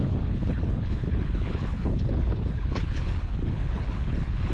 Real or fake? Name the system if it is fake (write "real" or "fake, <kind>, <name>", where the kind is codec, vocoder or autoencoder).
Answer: fake, codec, HILCodec